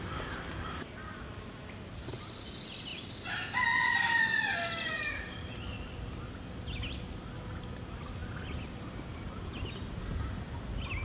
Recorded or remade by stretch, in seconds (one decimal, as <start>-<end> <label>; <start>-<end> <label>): 0.0-2.9 recorded; 2.9-4.9 remade; 4.9-11.0 recorded